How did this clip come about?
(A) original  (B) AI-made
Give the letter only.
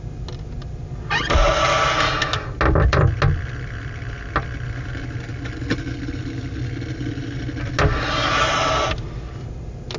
A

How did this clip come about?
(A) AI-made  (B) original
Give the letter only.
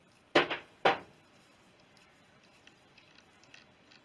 B